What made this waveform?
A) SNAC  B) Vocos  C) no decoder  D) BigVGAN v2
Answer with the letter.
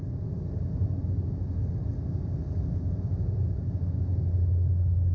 C